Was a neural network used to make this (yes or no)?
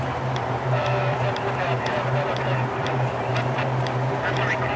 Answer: yes